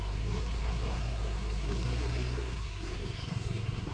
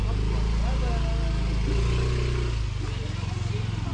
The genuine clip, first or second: second